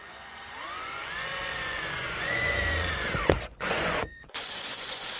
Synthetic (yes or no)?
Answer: yes